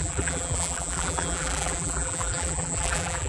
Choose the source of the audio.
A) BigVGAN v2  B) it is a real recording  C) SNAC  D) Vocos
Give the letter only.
A